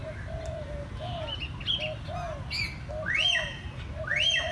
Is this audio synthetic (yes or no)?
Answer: no